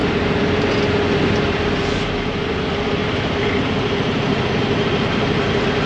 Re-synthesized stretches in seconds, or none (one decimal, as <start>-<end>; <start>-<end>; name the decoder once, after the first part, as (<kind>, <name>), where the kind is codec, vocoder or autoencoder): 0.0-0.7 (vocoder, BigVGAN v2); 3.0-5.2